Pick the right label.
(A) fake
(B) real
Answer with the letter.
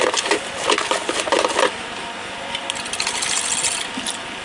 B